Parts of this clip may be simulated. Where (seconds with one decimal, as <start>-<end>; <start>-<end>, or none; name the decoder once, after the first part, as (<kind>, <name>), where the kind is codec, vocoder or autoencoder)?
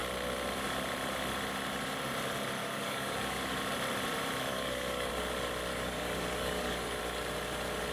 2.6-3.6 (codec, DAC); 4.5-5.1; 5.7-7.0